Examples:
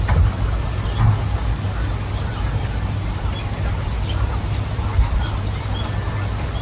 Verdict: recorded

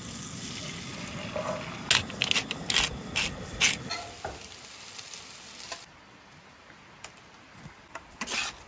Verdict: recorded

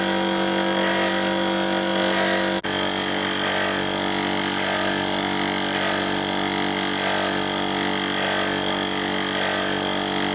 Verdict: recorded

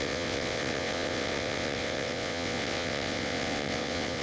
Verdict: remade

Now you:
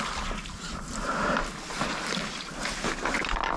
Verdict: recorded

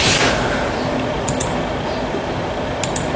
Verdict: recorded